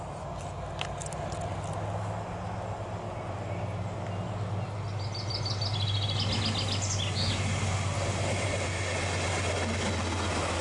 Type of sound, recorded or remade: recorded